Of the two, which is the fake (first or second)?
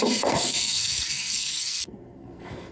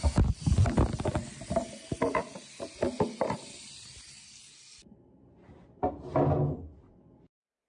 first